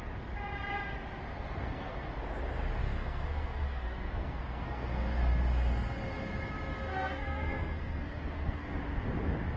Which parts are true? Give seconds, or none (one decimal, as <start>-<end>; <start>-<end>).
0.0-1.3; 2.1-2.8; 5.2-6.9; 8.8-9.6